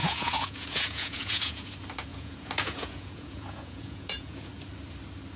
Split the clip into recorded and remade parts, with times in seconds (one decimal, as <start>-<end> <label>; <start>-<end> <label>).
0.0-1.7 remade; 1.7-2.1 recorded; 2.1-4.5 remade; 4.5-5.4 recorded